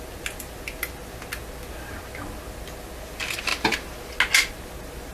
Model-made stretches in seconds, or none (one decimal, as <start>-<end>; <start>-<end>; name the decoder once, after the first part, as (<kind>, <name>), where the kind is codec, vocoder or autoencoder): none